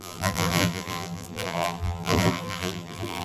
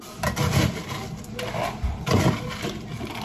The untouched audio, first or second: second